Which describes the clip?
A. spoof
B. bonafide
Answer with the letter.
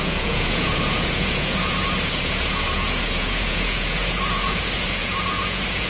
A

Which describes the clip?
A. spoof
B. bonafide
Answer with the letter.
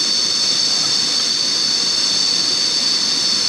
B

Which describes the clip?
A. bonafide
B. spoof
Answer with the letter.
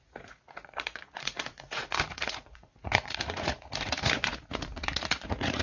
B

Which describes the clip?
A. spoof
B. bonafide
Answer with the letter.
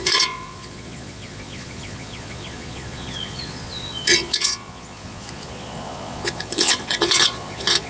A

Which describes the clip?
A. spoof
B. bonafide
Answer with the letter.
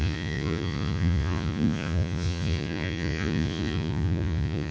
A